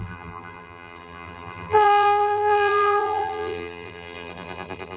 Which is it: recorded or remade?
remade